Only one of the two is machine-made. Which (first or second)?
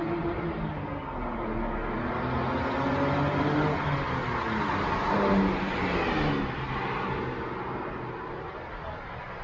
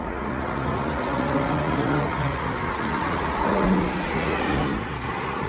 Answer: second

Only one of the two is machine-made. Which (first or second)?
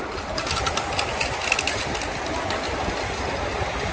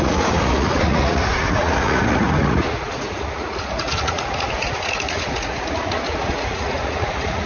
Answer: second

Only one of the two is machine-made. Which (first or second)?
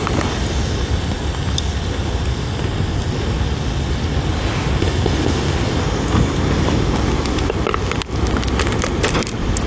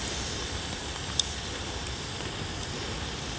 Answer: second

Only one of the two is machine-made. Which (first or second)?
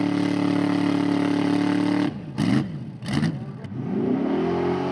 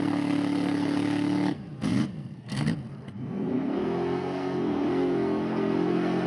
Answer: second